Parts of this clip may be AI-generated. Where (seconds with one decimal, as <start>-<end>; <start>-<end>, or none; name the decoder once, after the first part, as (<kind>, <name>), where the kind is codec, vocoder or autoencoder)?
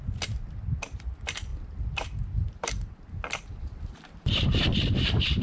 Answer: none